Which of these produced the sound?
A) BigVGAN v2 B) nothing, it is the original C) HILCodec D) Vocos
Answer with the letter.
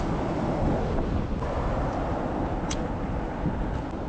B